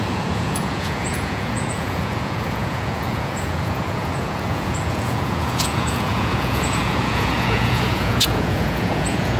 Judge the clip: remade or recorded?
remade